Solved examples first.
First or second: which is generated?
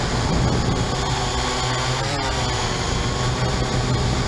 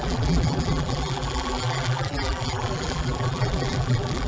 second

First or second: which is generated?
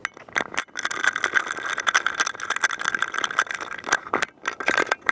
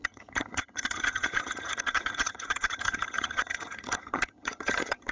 second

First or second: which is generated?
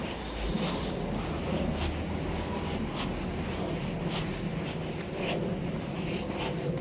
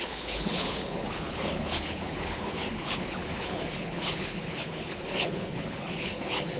second